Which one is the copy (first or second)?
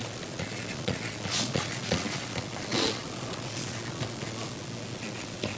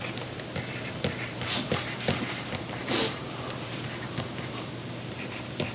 first